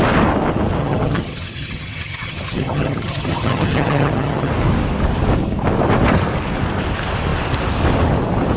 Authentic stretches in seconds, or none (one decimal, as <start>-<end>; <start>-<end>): 0.0-0.8; 4.5-8.6